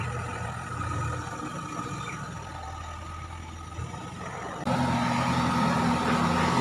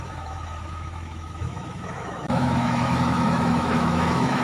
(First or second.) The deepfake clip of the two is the second